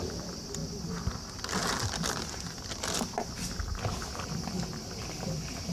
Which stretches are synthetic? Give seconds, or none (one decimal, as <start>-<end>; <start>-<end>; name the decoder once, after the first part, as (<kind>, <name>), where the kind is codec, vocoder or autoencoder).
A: none